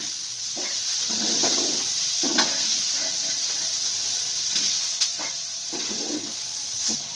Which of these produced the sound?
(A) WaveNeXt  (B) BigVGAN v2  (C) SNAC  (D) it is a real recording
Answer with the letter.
A